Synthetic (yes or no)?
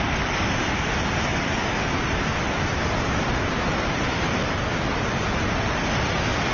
no